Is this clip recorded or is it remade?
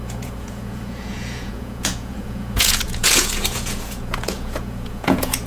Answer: remade